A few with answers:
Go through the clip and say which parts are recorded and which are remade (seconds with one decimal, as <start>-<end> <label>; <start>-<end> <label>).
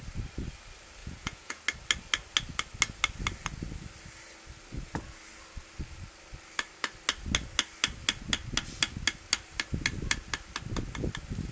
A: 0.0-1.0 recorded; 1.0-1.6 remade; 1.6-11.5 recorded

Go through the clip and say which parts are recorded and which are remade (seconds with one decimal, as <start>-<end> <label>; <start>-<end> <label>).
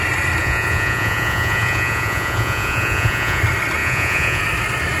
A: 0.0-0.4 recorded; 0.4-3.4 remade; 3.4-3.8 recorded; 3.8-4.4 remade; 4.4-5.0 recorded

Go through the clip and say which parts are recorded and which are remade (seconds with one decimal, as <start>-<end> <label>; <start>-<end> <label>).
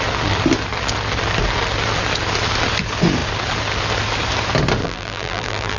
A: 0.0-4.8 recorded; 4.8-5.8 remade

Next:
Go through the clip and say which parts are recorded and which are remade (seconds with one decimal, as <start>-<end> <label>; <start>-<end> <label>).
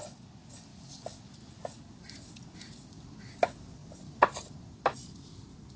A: 0.0-5.8 recorded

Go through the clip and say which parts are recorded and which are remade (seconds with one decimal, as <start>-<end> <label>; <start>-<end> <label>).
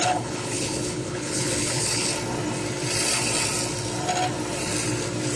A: 0.0-2.1 remade; 2.1-5.4 recorded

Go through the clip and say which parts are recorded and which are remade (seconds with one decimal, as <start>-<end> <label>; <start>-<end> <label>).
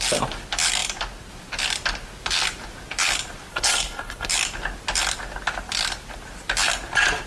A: 0.0-3.5 recorded; 3.5-4.3 remade; 4.3-7.3 recorded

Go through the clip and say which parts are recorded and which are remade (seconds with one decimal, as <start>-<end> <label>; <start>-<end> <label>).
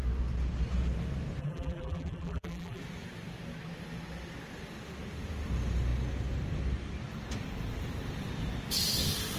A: 0.0-1.4 recorded; 1.4-2.8 remade; 2.8-9.4 recorded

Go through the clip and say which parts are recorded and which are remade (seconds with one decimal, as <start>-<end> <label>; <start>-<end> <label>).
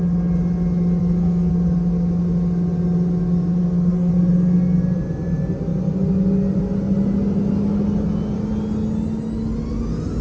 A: 0.0-1.0 recorded; 1.0-1.5 remade; 1.5-3.6 recorded; 3.6-4.1 remade; 4.1-10.2 recorded